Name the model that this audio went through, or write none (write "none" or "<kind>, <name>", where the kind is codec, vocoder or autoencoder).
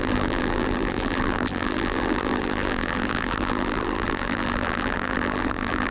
vocoder, BigVGAN v2